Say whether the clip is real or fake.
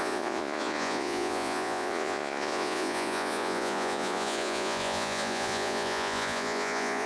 fake